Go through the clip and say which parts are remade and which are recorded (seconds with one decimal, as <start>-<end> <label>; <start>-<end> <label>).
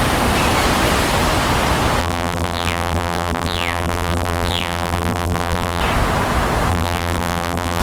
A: 0.0-2.0 recorded; 2.0-5.8 remade; 5.8-6.7 recorded; 6.7-7.8 remade